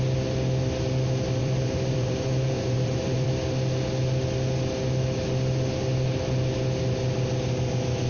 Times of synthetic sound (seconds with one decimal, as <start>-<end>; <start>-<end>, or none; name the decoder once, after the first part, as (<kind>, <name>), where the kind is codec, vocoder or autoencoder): 1.4-3.3 (vocoder, BigVGAN v2)